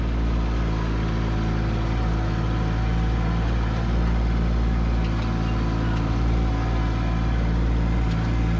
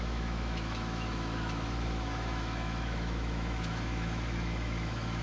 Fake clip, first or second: second